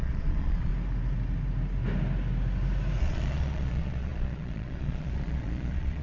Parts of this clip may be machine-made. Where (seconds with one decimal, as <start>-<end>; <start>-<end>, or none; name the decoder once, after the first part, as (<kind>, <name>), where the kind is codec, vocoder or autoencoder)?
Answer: 0.0-0.7 (vocoder, Vocos); 3.0-6.0